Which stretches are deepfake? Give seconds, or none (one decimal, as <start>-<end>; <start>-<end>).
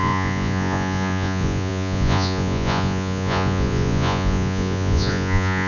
0.0-5.7